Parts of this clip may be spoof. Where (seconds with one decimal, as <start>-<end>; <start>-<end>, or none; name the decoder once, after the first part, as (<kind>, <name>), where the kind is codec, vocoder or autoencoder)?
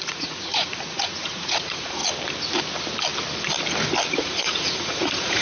0.0-2.0 (vocoder, Vocos); 4.1-5.4